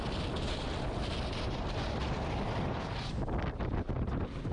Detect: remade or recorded recorded